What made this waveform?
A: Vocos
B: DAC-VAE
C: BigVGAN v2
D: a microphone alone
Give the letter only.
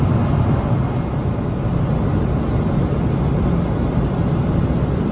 D